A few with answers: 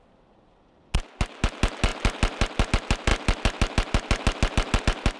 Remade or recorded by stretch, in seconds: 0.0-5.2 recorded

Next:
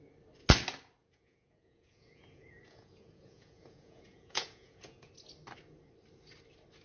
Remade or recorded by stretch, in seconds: 0.0-1.0 recorded; 1.0-5.1 remade; 5.1-6.8 recorded

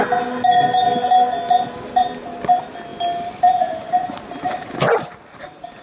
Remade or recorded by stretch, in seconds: 0.0-5.8 recorded

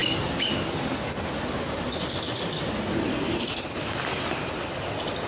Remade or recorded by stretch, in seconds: 0.0-1.2 remade; 1.2-5.3 recorded

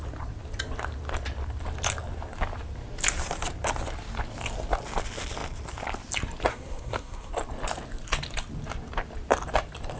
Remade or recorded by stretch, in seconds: 0.0-6.5 recorded; 6.5-7.3 remade; 7.3-10.0 recorded

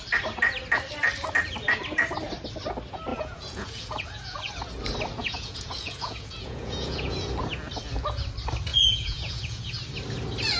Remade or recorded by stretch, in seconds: 0.0-3.1 recorded; 3.1-4.5 remade; 4.5-5.2 recorded; 5.2-7.3 remade; 7.3-8.7 recorded; 8.7-9.7 remade; 9.7-10.6 recorded

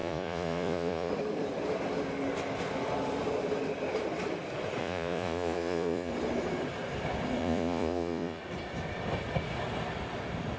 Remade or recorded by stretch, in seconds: 0.0-1.1 remade; 1.1-4.8 recorded; 4.8-6.1 remade; 6.1-7.4 recorded; 7.4-8.4 remade; 8.4-10.6 recorded